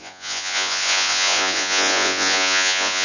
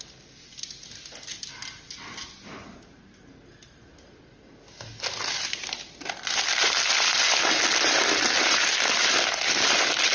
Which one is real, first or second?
second